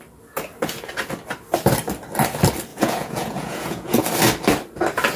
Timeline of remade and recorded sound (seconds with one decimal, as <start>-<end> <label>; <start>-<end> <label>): 0.0-2.7 recorded; 2.7-4.0 remade; 4.0-5.2 recorded